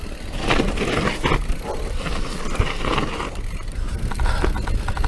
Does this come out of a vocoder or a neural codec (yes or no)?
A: no